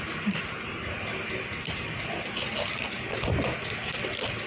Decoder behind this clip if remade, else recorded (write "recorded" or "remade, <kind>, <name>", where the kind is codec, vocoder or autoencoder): recorded